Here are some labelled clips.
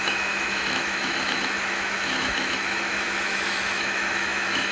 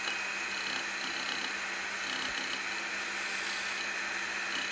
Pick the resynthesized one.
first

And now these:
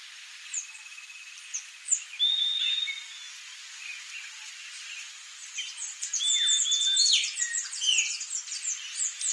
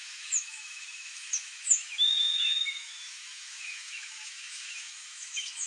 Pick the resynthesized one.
second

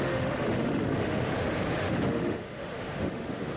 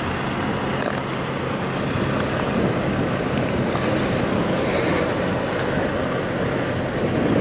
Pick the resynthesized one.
first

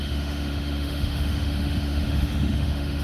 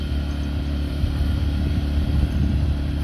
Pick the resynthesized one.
first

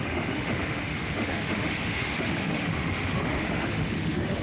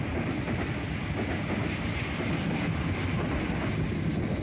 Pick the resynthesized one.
first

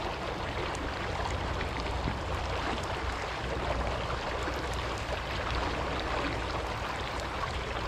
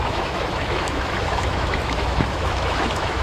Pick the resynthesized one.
second